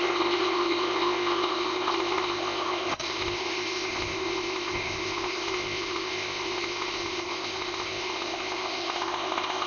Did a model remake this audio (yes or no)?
yes